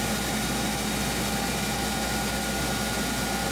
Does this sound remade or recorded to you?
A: recorded